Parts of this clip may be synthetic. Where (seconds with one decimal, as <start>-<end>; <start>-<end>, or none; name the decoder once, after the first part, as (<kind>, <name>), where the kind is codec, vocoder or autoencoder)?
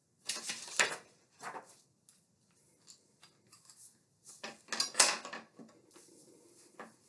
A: none